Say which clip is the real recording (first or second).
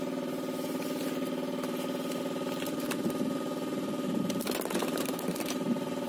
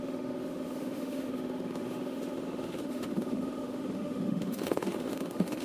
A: first